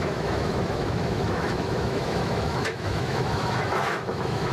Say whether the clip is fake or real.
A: fake